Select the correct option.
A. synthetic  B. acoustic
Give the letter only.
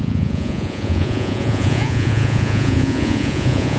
A